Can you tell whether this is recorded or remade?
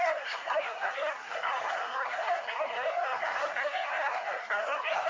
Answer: remade